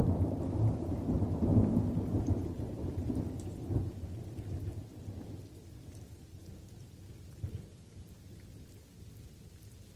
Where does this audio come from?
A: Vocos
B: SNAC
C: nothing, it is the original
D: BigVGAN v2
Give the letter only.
C